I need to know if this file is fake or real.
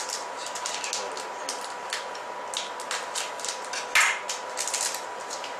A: real